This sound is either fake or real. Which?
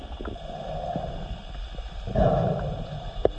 real